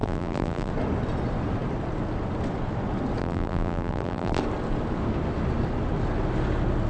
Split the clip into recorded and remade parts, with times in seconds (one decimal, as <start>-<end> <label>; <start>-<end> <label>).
0.0-0.7 remade; 0.7-3.2 recorded; 3.2-4.4 remade; 4.4-6.9 recorded